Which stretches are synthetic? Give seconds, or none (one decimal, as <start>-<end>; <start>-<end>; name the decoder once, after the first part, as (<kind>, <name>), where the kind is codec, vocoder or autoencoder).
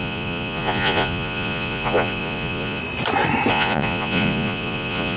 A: 0.0-2.8 (vocoder, Vocos); 3.5-5.2